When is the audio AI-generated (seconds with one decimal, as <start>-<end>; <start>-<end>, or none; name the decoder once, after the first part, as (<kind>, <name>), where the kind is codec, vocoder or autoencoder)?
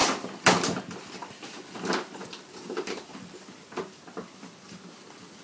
0.0-0.6 (vocoder, BigVGAN v2); 1.2-3.7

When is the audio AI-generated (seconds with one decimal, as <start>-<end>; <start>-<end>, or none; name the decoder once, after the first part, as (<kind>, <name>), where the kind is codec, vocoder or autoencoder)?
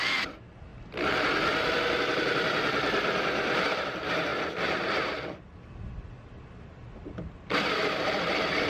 0.7-3.2 (vocoder, BigVGAN v2); 4.3-7.3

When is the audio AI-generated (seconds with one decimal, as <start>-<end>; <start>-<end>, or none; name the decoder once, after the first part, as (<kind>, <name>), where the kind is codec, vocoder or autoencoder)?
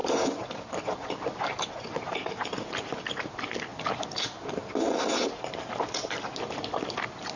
0.0-3.7 (vocoder, BigVGAN v2); 6.2-7.4